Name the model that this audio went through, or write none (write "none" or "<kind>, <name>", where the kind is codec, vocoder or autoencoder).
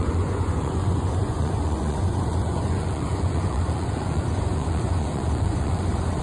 vocoder, Vocos